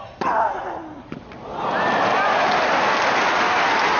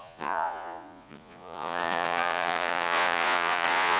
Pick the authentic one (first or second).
first